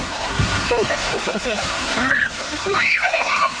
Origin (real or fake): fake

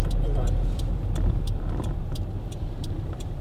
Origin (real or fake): fake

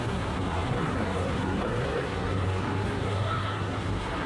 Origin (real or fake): fake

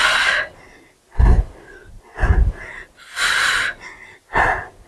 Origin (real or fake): real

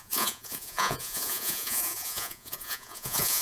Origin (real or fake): fake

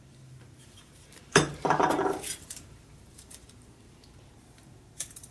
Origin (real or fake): fake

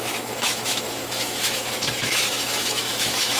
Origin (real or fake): fake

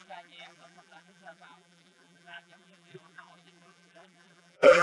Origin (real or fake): fake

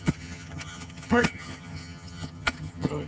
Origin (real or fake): fake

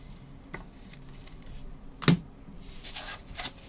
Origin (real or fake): real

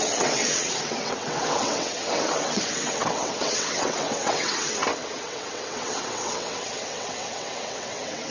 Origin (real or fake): fake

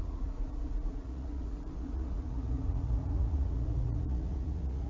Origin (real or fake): fake